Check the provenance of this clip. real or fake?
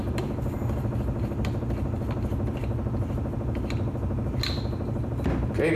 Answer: real